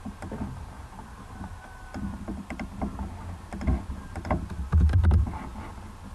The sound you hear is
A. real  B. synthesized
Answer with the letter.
A